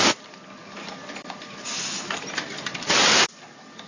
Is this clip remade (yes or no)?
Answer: no